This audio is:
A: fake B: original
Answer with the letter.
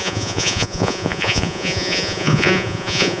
A